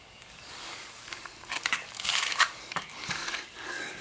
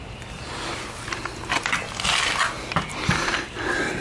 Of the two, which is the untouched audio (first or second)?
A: second